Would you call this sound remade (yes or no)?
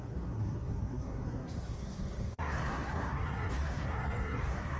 yes